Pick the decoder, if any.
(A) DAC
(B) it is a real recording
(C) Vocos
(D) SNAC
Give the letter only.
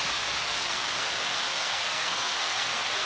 D